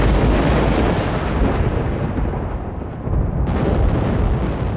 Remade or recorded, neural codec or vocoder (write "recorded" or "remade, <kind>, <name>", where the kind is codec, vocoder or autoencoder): recorded